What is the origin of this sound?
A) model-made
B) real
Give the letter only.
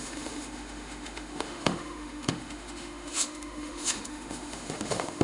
A